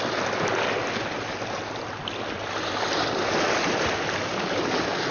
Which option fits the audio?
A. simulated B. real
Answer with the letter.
B